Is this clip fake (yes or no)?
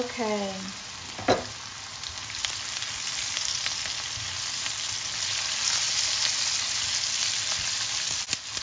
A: no